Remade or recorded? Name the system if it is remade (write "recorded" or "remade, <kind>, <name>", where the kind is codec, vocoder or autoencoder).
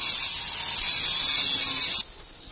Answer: recorded